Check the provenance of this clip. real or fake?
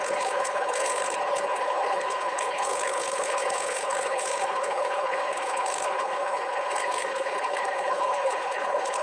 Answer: fake